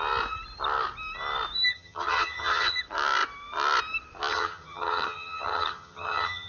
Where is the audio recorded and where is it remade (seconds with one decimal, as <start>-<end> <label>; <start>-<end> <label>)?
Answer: 0.0-1.7 recorded; 1.7-2.8 remade; 2.8-4.3 recorded; 4.3-6.5 remade